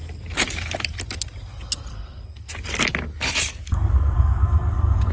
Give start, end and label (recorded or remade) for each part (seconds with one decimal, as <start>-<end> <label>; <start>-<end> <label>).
0.0-1.9 recorded; 1.9-2.5 remade; 2.5-3.5 recorded; 3.5-5.1 remade